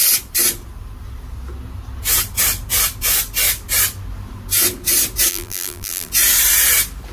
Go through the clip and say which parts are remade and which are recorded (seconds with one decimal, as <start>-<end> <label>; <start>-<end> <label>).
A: 0.0-5.3 recorded; 5.3-6.1 remade; 6.1-7.1 recorded